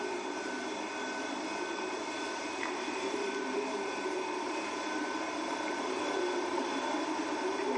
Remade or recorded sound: remade